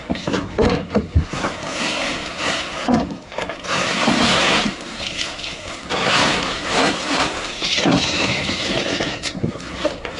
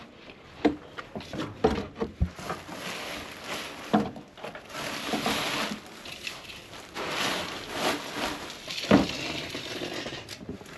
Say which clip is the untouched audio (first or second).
second